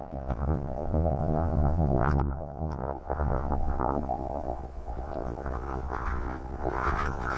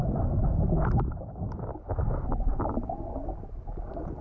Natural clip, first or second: second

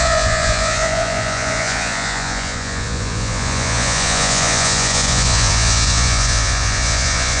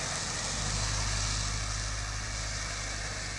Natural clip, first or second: second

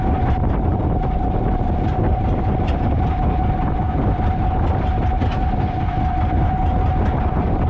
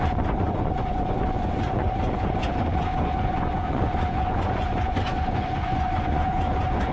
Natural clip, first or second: first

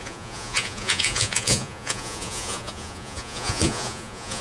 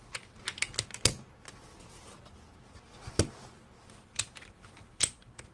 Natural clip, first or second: second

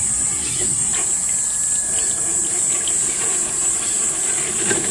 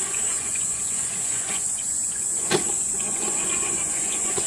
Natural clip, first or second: first